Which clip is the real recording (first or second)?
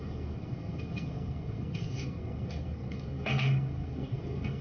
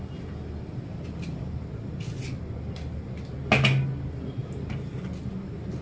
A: second